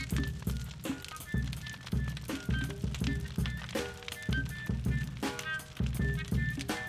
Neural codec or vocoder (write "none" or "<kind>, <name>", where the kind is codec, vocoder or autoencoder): none